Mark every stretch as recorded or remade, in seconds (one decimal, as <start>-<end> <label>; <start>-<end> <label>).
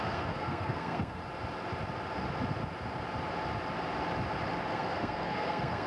0.0-1.2 remade; 1.2-4.7 recorded; 4.7-5.9 remade